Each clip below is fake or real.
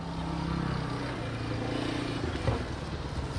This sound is real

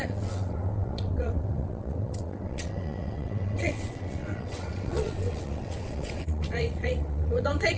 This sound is fake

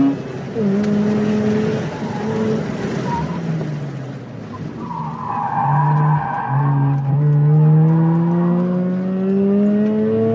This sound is real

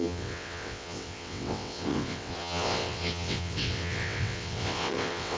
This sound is fake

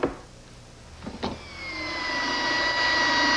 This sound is real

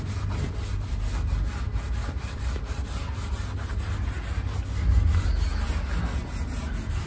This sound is real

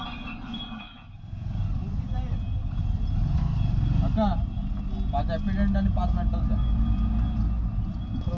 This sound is real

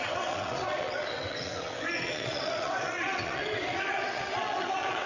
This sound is fake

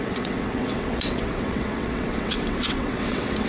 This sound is fake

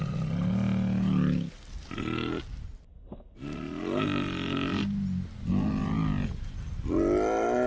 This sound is real